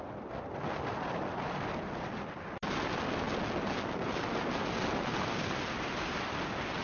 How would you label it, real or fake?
real